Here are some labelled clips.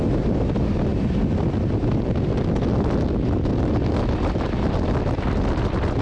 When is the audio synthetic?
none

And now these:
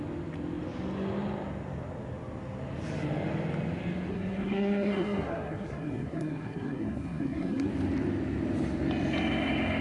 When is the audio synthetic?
4.1-7.7 (codec, SNAC)